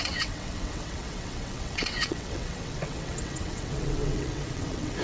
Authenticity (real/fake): fake